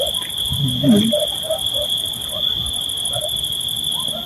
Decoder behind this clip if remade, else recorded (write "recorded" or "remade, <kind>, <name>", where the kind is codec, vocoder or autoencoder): recorded